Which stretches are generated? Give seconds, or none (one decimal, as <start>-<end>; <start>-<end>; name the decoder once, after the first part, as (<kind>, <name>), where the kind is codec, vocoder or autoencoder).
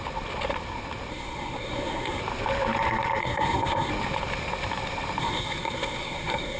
1.1-2.2 (codec, SNAC); 3.2-3.9; 5.2-6.6